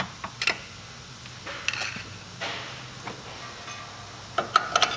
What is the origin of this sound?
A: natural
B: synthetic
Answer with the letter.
A